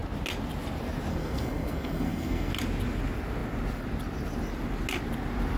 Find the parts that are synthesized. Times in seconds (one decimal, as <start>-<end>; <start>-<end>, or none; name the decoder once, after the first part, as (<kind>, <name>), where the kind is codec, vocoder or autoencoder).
1.1-2.5 (codec, SNAC)